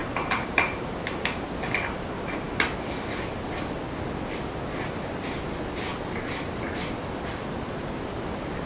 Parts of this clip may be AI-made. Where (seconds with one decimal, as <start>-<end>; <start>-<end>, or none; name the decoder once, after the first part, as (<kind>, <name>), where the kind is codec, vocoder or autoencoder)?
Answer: 0.0-1.2 (vocoder, BigVGAN v2)